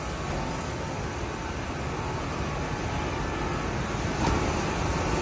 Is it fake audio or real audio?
real